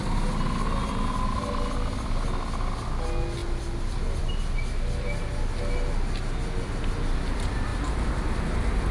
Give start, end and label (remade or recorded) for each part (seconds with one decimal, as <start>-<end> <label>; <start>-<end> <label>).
0.0-8.9 recorded